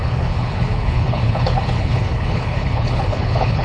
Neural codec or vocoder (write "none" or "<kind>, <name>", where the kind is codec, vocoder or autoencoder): codec, HILCodec